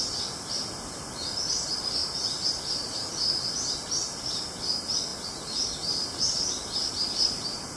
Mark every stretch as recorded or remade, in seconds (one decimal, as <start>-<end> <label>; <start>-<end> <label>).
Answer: 0.0-7.8 recorded